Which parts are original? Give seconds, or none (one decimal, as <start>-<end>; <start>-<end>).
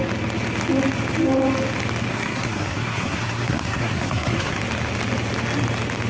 0.0-2.1; 4.6-6.1